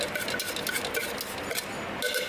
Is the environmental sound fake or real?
real